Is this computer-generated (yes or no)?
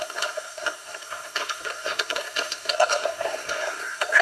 yes